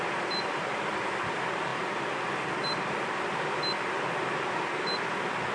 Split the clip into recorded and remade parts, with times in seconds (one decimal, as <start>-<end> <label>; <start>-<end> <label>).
0.0-5.5 recorded